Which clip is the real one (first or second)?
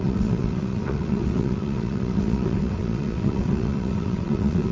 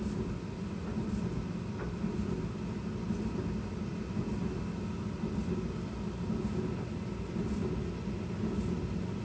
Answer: second